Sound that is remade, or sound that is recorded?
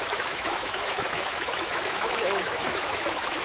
remade